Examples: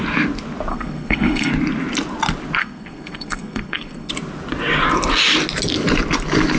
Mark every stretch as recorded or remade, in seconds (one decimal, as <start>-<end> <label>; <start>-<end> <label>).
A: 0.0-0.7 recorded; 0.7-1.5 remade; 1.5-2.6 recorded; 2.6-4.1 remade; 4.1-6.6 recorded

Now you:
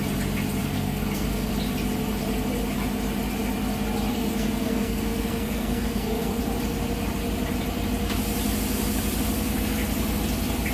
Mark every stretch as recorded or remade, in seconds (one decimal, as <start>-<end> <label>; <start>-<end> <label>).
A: 0.0-0.6 recorded; 0.6-1.5 remade; 1.5-4.1 recorded; 4.1-6.4 remade; 6.4-10.7 recorded

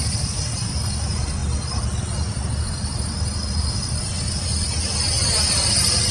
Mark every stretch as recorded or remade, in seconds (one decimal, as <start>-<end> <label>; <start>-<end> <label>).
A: 0.0-6.1 recorded